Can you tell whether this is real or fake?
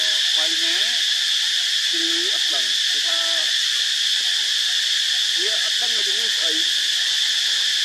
real